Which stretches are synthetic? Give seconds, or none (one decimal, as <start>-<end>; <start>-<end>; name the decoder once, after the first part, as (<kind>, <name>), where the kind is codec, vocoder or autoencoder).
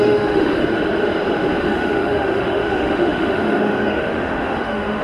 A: 0.0-0.6 (autoencoder, DAC-VAE); 1.6-5.0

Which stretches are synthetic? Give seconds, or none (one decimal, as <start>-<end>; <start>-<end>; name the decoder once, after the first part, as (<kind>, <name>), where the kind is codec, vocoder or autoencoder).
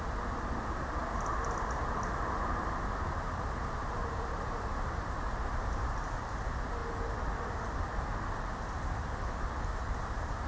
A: 1.0-6.1 (vocoder, BigVGAN v2)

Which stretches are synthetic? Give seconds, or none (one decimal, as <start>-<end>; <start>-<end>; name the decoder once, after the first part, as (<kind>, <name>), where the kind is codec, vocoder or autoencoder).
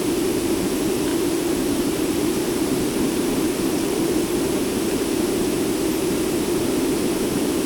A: 1.1-4.4 (vocoder, BigVGAN v2)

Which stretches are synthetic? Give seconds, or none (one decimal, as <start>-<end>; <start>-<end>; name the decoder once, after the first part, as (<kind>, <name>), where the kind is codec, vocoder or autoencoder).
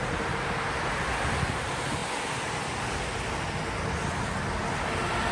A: none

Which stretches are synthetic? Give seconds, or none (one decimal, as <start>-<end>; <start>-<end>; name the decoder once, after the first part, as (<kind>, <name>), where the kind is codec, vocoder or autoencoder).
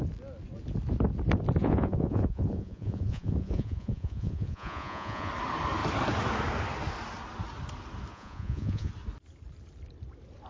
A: 1.6-5.3 (vocoder, Vocos); 8.1-8.9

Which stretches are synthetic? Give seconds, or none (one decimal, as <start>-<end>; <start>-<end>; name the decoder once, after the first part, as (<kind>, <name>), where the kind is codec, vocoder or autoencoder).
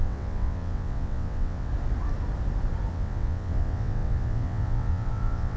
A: 0.0-1.7 (vocoder, WaveNeXt); 2.9-5.6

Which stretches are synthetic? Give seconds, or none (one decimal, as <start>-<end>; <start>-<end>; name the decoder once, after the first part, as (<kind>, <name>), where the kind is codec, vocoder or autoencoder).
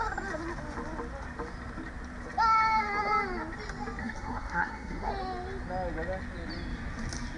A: 4.0-5.1 (codec, SNAC)